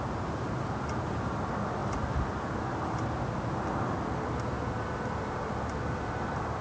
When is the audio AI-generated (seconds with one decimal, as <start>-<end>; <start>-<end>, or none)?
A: none